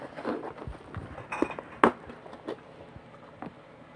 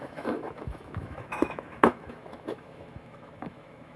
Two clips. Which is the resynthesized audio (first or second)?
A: second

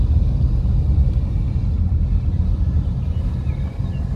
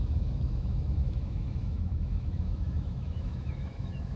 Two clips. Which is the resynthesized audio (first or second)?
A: second